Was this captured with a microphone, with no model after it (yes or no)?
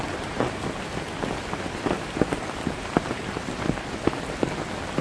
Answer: yes